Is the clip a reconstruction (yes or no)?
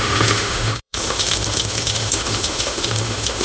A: yes